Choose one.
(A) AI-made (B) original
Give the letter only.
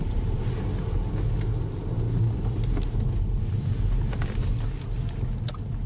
B